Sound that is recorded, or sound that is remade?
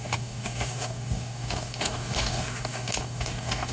remade